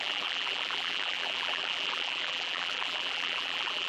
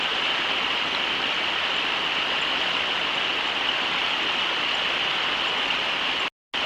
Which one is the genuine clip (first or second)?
second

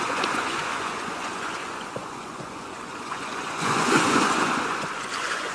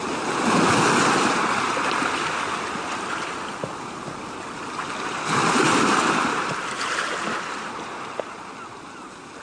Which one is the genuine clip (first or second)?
second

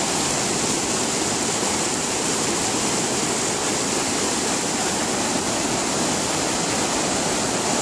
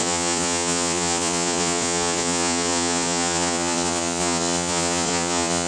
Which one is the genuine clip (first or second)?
first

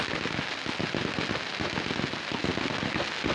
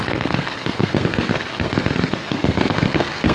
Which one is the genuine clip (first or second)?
first